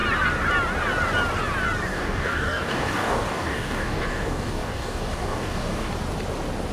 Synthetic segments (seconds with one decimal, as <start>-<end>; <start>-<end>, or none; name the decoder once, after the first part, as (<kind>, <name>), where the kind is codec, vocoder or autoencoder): 1.9-5.9 (codec, DAC)